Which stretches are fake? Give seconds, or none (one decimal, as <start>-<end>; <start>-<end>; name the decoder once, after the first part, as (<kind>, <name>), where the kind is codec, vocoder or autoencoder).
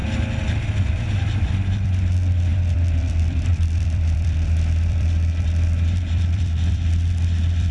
0.6-7.7 (vocoder, BigVGAN v2)